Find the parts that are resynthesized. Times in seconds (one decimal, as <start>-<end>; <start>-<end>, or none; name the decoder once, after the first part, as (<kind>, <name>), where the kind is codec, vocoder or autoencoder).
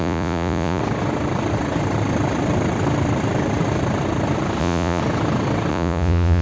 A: 0.0-0.8 (vocoder, Vocos); 4.6-5.0; 5.7-6.4